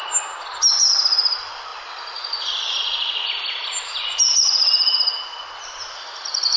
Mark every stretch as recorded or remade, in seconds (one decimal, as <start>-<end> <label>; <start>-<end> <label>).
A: 0.0-6.6 recorded